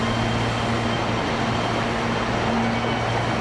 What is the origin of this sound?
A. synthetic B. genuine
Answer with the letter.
B